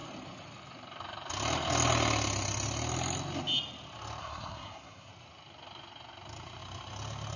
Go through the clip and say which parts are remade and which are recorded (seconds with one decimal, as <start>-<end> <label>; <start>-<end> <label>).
0.0-4.2 recorded; 4.2-5.1 remade; 5.1-7.4 recorded